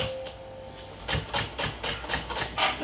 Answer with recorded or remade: recorded